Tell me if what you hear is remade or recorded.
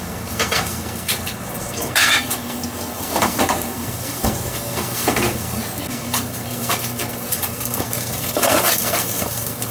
remade